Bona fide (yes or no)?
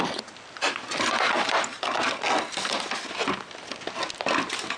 yes